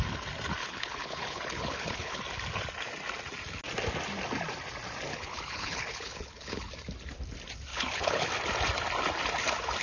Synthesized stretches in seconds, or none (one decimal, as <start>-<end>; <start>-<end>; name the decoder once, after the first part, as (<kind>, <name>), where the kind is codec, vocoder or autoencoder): 0.6-2.2 (codec, HILCodec); 5.1-6.7; 7.7-8.3